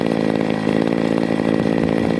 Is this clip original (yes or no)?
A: yes